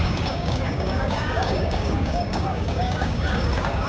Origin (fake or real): fake